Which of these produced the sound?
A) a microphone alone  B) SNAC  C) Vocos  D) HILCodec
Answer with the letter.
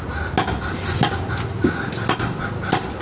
A